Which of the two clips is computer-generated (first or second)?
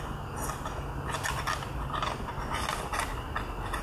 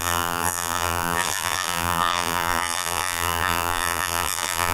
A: second